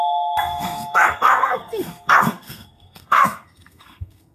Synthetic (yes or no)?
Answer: yes